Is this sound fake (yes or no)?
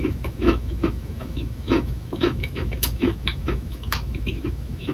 yes